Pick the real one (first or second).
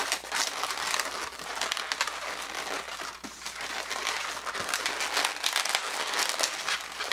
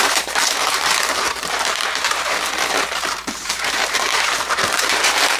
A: first